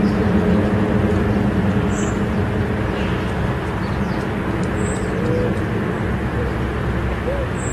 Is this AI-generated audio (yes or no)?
no